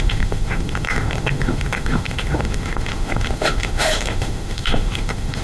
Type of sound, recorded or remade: remade